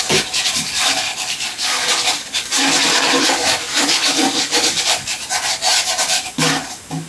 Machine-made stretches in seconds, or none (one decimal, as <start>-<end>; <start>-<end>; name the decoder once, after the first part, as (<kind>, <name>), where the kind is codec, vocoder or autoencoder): 0.0-5.2 (codec, DAC); 6.0-7.1